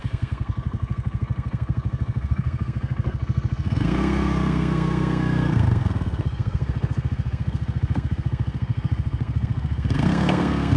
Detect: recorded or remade remade